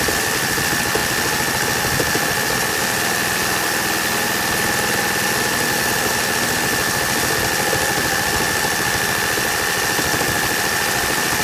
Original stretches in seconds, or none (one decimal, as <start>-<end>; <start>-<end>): 0.0-11.4